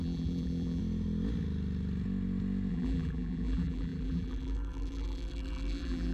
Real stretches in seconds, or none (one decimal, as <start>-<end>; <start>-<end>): 0.8-2.7